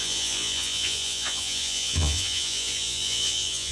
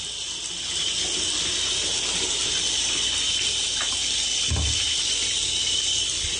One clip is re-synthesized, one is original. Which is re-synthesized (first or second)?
first